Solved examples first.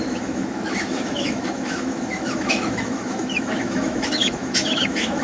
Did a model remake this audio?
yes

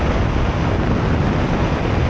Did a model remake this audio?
no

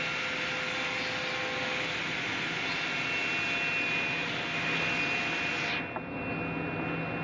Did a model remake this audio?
no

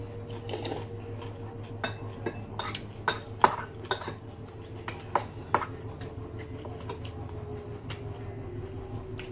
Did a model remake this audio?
no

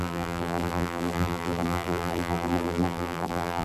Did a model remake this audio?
yes